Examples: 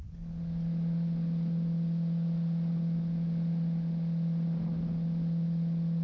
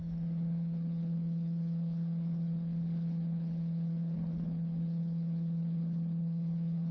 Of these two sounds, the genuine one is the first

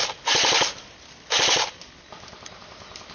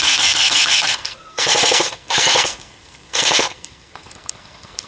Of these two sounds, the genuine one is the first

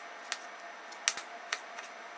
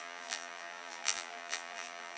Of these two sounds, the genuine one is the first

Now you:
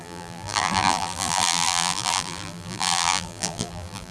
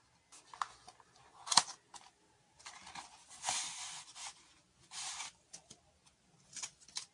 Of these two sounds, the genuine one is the second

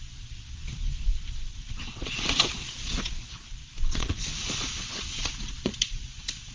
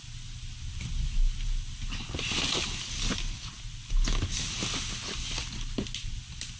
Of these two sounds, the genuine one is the second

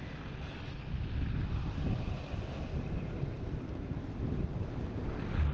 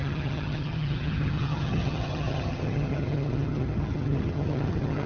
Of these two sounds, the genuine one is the first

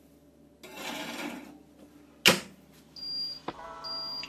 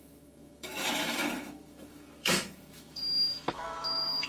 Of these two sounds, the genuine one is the first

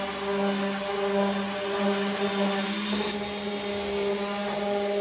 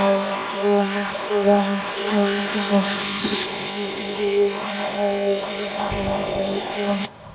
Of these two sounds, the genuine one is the first